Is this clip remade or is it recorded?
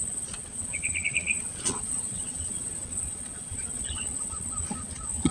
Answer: remade